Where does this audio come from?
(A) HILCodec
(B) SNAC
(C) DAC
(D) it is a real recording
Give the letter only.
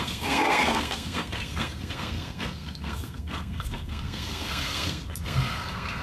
B